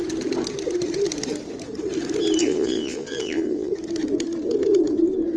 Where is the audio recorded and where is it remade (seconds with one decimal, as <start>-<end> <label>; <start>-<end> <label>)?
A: 0.0-2.4 recorded; 2.4-3.7 remade; 3.7-5.4 recorded